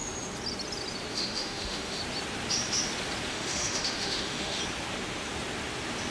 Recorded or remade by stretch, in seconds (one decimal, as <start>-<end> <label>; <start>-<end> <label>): 0.0-1.1 recorded; 1.1-2.0 remade; 2.0-3.3 recorded; 3.3-4.6 remade; 4.6-6.1 recorded